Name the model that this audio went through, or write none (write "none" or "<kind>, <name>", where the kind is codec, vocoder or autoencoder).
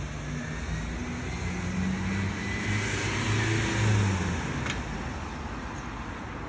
none